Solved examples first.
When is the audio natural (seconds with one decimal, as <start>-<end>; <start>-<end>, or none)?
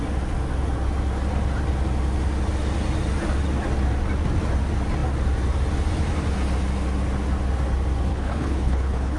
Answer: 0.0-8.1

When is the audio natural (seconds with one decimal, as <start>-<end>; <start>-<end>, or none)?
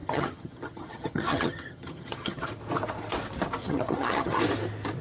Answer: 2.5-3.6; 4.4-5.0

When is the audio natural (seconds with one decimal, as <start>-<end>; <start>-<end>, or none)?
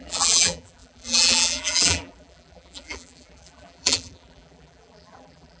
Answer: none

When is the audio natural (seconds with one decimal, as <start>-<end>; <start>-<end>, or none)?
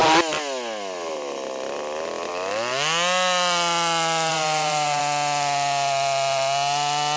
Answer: 0.0-4.3; 5.0-7.2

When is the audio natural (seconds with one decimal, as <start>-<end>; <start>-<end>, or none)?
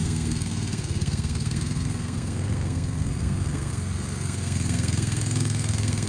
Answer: none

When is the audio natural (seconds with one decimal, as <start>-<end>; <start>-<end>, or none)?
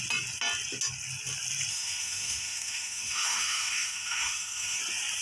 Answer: 0.0-1.7; 4.8-5.2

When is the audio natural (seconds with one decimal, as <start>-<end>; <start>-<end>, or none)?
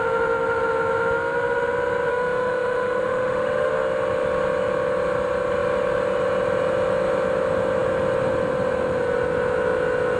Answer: 0.0-2.1; 3.7-10.2